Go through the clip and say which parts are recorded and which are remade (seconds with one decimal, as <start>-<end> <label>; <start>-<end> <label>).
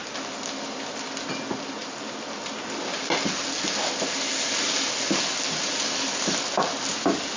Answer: 0.0-7.4 recorded